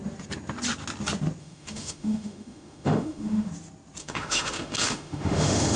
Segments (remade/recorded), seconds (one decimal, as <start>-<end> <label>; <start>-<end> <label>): 0.0-1.4 recorded; 1.4-3.5 remade; 3.5-4.0 recorded; 4.0-5.8 remade